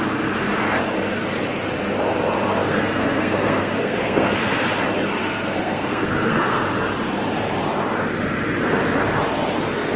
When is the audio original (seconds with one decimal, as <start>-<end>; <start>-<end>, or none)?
0.0-2.6; 4.5-5.2; 6.6-10.0